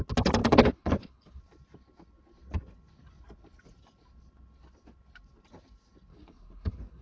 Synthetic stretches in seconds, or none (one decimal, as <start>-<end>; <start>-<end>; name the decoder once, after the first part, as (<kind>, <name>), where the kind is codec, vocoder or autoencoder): 0.4-1.4 (codec, HILCodec); 6.1-7.0